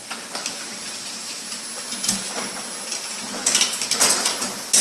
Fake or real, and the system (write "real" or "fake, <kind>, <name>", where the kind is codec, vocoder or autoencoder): real